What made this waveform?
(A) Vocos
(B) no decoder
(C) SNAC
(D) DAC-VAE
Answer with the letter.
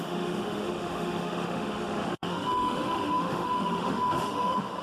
D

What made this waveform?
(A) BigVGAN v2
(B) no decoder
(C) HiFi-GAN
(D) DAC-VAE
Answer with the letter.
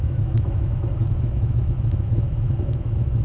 D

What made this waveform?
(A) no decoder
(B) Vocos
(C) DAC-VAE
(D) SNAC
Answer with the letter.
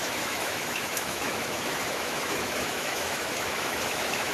C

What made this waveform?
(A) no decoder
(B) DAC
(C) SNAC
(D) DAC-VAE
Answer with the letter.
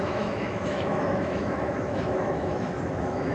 D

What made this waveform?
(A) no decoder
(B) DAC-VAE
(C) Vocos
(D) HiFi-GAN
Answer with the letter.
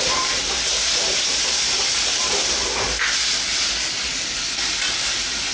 A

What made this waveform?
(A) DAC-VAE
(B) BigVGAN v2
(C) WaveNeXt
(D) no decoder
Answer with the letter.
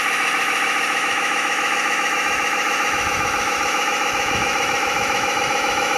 A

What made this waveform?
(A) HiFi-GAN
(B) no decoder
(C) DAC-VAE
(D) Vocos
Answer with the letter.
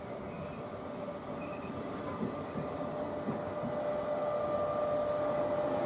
B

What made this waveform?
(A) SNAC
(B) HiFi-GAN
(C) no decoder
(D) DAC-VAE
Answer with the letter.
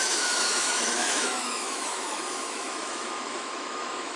D